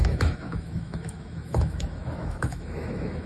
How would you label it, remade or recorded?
remade